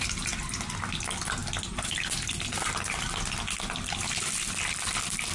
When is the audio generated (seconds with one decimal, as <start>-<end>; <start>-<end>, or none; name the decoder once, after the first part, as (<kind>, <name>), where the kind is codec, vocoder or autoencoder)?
none